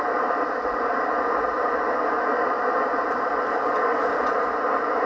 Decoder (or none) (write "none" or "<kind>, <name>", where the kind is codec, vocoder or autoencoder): none